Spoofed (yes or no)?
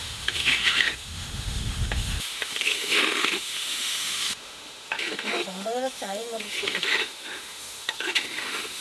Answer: yes